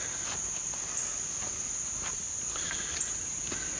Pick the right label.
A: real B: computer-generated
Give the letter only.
A